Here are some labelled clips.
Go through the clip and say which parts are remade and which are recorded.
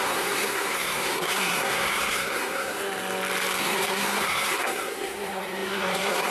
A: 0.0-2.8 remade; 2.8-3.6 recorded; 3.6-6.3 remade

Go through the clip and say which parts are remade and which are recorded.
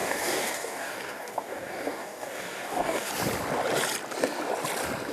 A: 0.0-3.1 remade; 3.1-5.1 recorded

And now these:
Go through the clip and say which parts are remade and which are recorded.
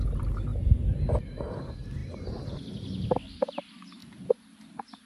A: 0.0-4.0 recorded; 4.0-5.1 remade